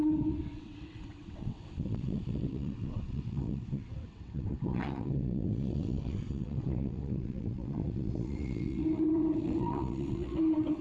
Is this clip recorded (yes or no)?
no